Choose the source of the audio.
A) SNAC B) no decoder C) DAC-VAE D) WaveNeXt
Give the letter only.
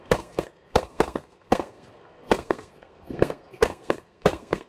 A